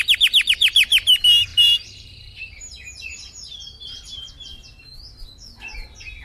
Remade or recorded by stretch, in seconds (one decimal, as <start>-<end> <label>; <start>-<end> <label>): 0.0-1.5 recorded; 1.5-4.3 remade; 4.3-6.2 recorded